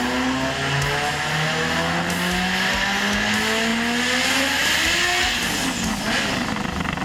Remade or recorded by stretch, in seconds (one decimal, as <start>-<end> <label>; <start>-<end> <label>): 0.0-7.0 recorded